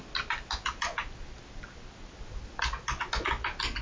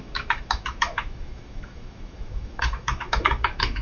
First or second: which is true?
first